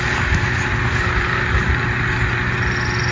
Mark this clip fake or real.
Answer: real